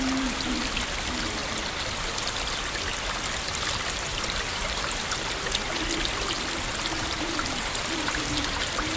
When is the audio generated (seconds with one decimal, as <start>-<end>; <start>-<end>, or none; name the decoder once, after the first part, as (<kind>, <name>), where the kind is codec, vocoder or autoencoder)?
4.1-5.0 (vocoder, BigVGAN v2); 7.0-8.6